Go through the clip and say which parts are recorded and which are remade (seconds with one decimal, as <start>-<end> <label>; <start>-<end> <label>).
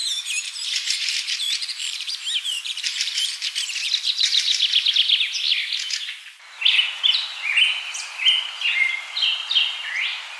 0.0-4.9 remade; 4.9-10.4 recorded